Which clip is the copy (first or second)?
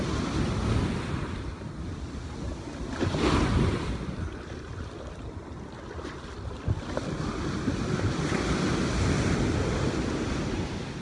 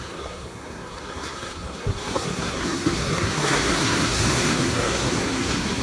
second